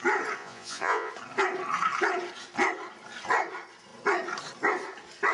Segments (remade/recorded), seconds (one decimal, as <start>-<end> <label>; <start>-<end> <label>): 0.0-0.4 recorded; 0.4-1.1 remade; 1.1-5.3 recorded

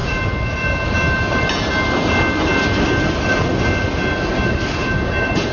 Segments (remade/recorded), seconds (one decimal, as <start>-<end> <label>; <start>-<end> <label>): 0.0-5.5 recorded